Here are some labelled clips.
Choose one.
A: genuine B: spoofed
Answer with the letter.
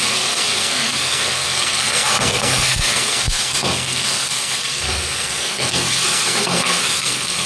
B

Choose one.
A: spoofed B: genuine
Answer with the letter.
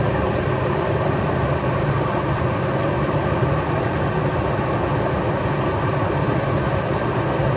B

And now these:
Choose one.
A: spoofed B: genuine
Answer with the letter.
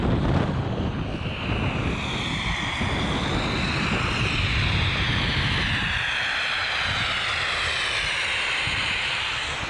B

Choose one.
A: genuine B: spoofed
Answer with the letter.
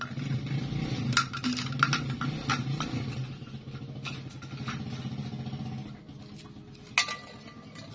A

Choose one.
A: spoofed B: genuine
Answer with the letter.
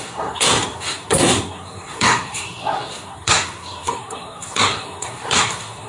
A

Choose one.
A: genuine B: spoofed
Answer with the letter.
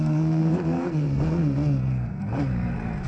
B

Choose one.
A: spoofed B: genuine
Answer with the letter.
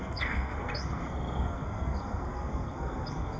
A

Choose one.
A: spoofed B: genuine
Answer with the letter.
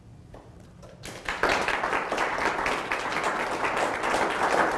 B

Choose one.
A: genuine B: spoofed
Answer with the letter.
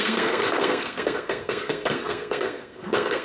B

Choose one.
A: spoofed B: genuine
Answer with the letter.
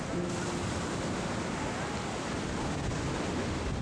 B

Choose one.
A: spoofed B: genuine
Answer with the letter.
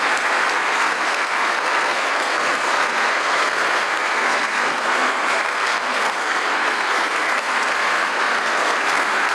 A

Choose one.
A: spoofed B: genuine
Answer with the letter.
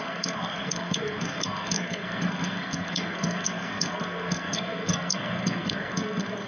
A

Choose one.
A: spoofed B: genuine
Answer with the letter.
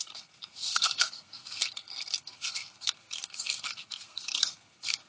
A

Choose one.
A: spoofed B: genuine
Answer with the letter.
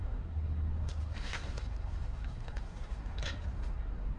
A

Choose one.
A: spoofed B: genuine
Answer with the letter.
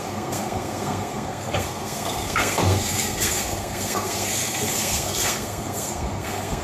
A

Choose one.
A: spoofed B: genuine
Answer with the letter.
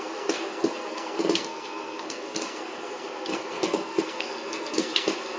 A